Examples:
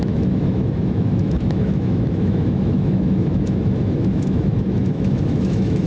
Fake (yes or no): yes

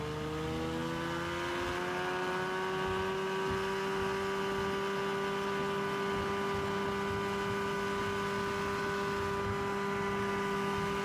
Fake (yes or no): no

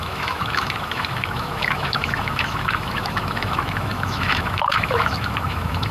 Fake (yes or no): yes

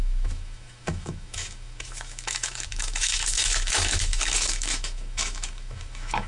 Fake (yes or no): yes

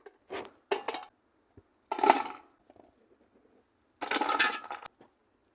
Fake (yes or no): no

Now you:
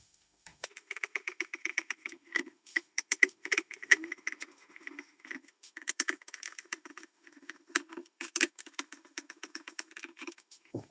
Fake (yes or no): yes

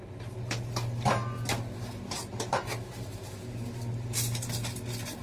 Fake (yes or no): no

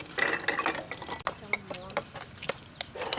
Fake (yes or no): no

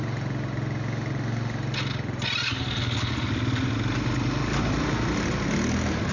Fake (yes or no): no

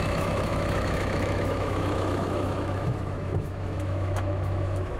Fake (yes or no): yes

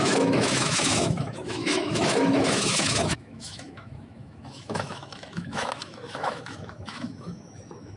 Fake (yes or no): yes